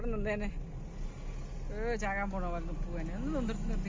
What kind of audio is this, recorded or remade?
recorded